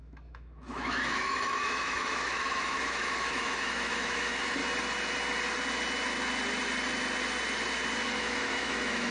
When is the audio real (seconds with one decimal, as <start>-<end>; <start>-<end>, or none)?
4.6-8.2